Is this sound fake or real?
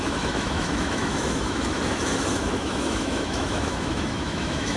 fake